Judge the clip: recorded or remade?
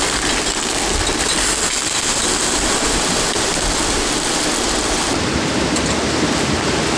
recorded